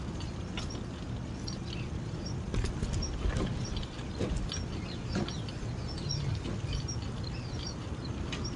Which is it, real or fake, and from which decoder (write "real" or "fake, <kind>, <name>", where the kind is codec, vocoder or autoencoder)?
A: real